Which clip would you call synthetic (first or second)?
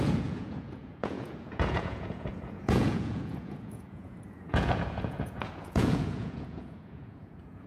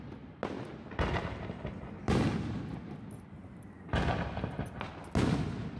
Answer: first